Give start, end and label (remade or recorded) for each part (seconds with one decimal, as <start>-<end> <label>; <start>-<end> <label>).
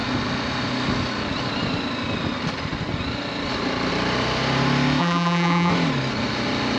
0.0-5.0 recorded; 5.0-5.7 remade; 5.7-6.8 recorded